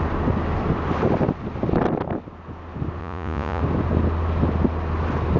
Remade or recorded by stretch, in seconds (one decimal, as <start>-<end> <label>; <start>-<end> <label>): 0.0-3.0 recorded; 3.0-3.6 remade; 3.6-5.4 recorded